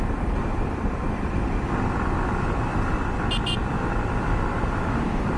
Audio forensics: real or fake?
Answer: fake